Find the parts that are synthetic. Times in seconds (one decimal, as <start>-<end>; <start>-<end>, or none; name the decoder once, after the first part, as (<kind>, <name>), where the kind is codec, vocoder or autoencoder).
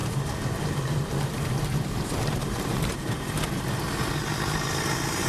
0.0-3.2 (vocoder, BigVGAN v2)